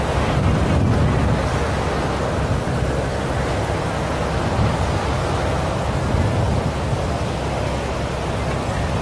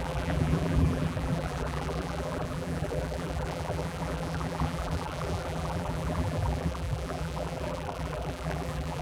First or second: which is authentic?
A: first